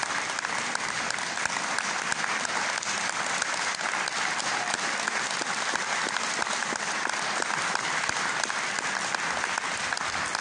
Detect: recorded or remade recorded